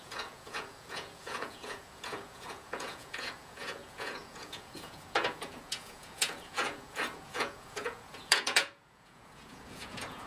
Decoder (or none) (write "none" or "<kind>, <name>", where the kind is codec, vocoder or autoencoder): vocoder, Vocos